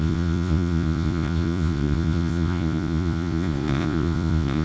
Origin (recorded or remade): remade